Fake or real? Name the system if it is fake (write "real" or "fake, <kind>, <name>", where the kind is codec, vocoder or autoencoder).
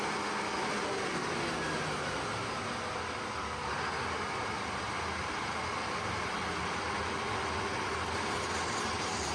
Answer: real